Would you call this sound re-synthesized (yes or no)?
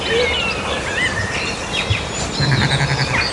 no